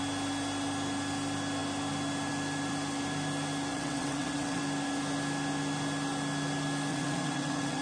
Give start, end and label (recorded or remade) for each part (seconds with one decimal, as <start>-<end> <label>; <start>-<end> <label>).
0.0-3.7 recorded; 3.7-4.6 remade; 4.6-6.9 recorded; 6.9-7.8 remade